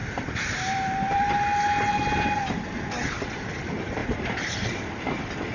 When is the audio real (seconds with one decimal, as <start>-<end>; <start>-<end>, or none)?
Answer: 1.2-4.0; 4.8-5.5